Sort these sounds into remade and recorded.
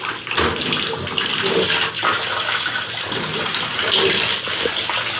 recorded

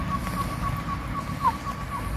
recorded